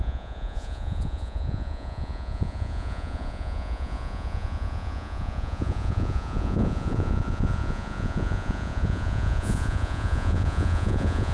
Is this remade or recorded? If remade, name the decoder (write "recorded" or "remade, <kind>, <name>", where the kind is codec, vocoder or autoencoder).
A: remade, vocoder, Vocos